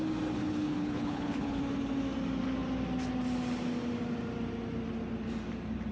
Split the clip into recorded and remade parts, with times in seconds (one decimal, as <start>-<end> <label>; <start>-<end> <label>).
0.0-0.4 recorded; 0.4-1.6 remade; 1.6-5.9 recorded